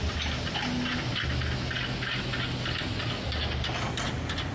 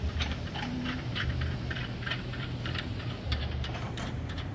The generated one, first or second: second